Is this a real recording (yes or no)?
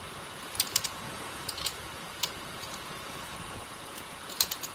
no